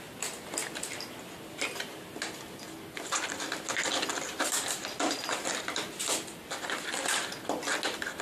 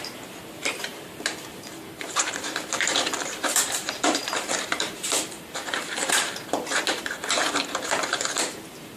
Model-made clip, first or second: second